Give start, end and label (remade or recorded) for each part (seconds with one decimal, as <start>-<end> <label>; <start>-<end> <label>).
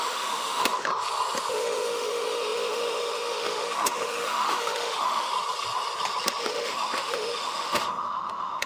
0.0-0.9 remade; 0.9-1.5 recorded; 1.5-5.3 remade; 5.3-6.4 recorded; 6.4-8.7 remade